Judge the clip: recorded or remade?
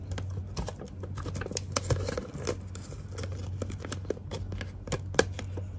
recorded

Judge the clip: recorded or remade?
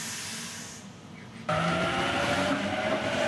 recorded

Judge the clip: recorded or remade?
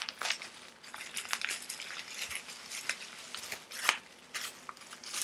recorded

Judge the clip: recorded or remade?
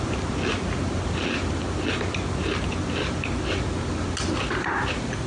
recorded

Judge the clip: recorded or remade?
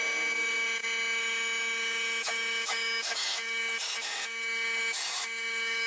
remade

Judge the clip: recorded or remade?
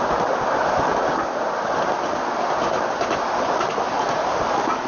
recorded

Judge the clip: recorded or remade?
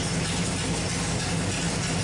recorded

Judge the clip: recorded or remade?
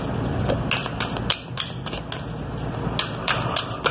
recorded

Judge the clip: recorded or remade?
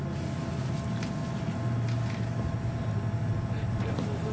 recorded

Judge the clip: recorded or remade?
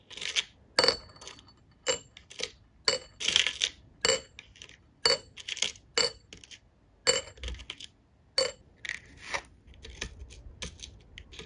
recorded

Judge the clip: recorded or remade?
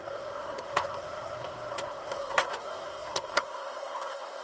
remade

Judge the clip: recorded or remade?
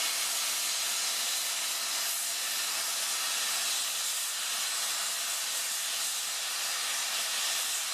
recorded